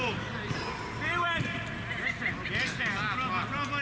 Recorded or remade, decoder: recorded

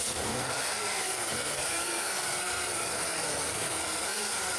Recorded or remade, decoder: remade, codec, SNAC